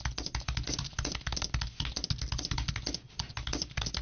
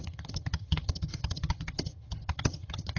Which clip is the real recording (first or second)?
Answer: first